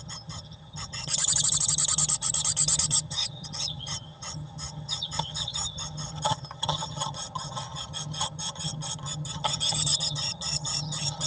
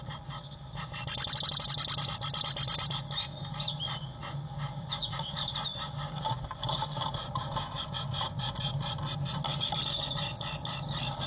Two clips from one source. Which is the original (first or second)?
second